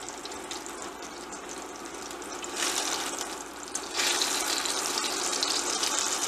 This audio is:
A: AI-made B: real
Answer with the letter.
A